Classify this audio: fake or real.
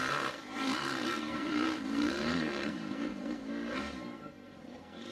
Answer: fake